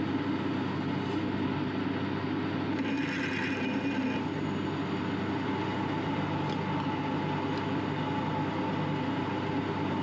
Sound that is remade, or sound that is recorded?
recorded